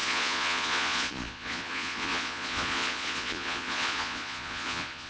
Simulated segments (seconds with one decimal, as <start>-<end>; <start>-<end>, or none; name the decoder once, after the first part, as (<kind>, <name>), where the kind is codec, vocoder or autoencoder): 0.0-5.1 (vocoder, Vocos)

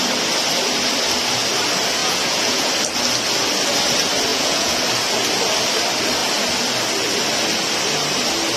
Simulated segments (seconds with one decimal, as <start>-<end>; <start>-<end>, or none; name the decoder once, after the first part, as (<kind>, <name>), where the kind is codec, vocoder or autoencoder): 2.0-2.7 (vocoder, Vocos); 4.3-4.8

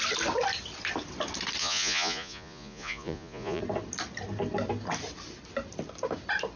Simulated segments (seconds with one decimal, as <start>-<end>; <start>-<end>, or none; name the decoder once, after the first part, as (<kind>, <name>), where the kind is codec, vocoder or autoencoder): 1.6-3.6 (vocoder, Vocos)

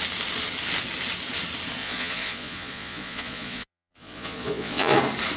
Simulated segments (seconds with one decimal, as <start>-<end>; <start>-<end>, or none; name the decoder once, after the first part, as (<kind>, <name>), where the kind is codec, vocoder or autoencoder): 1.8-5.0 (vocoder, Vocos)

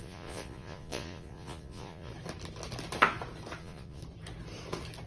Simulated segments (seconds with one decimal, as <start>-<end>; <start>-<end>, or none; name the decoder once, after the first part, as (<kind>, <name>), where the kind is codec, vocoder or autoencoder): 0.0-2.1 (vocoder, Vocos); 3.6-4.0

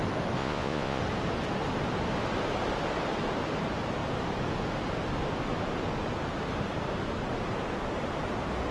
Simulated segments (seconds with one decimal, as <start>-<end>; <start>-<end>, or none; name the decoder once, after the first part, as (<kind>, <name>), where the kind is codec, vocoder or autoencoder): 0.4-1.0 (vocoder, Vocos)